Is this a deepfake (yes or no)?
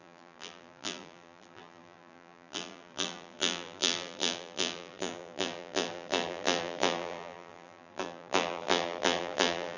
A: yes